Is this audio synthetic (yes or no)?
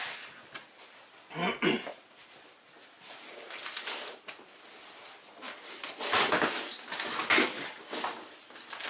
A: no